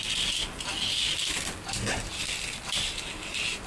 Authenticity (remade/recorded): recorded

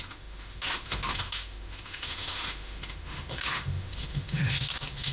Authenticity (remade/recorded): remade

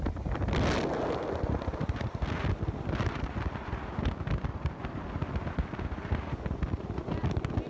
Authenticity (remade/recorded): recorded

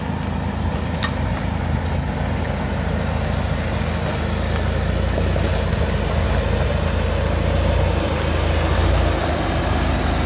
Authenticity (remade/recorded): recorded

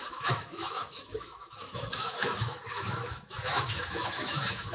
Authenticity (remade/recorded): remade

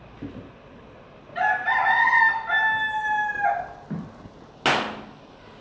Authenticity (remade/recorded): recorded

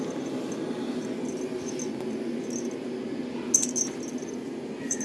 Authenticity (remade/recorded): recorded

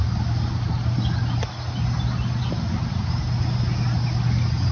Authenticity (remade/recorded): recorded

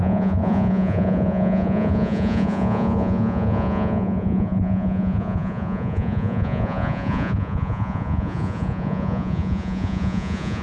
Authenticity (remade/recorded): remade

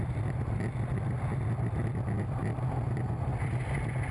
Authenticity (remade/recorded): recorded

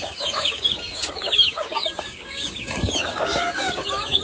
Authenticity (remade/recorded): remade